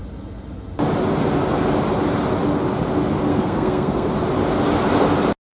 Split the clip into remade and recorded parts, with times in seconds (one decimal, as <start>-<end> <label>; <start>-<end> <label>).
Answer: 0.0-3.3 recorded; 3.3-4.1 remade; 4.1-5.5 recorded